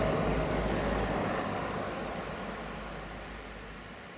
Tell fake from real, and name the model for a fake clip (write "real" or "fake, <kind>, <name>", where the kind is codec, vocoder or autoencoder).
real